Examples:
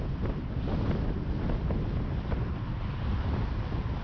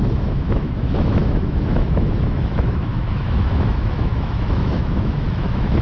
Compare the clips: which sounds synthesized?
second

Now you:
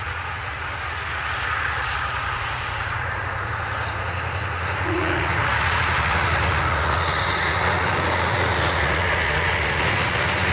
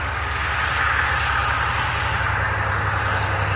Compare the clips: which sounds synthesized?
first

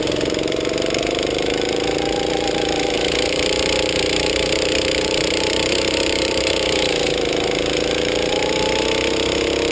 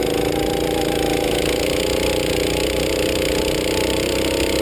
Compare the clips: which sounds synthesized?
first